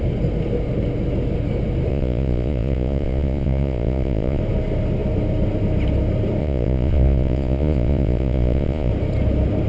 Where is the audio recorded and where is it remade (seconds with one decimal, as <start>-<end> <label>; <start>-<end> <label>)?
0.0-1.9 recorded; 1.9-4.4 remade; 4.4-6.4 recorded; 6.4-8.9 remade; 8.9-9.7 recorded